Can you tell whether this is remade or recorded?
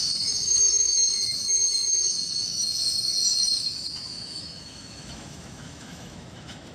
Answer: remade